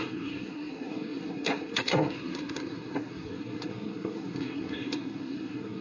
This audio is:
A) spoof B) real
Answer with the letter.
A